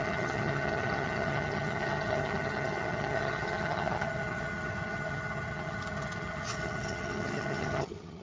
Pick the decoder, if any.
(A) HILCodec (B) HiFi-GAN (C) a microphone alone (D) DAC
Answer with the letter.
B